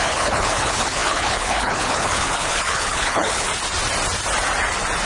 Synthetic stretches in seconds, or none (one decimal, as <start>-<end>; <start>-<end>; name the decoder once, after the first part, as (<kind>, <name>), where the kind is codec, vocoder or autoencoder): 0.0-3.5 (codec, HILCodec)